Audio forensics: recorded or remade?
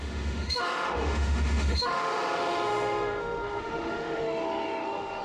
remade